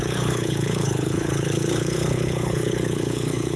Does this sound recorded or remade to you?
remade